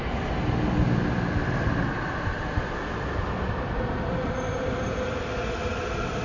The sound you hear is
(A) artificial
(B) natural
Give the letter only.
B